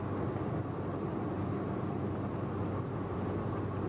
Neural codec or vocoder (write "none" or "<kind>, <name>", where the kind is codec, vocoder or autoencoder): none